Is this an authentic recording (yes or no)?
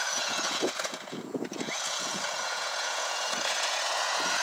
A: no